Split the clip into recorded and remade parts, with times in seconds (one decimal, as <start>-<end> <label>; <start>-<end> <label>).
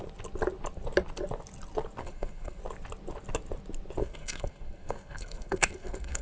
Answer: 0.0-2.0 recorded; 2.0-2.6 remade; 2.6-4.0 recorded; 4.0-6.2 remade